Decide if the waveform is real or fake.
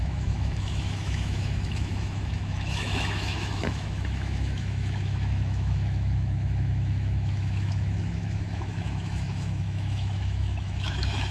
fake